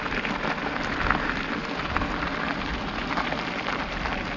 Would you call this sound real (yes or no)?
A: yes